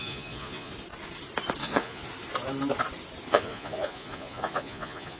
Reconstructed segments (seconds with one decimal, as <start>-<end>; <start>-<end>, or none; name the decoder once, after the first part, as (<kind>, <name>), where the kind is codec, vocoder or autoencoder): 0.0-0.7 (vocoder, Vocos); 1.6-2.0; 3.3-5.2